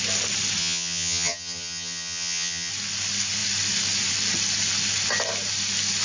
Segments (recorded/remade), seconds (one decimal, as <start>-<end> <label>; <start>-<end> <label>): 0.0-0.6 recorded; 0.6-2.7 remade; 2.7-6.0 recorded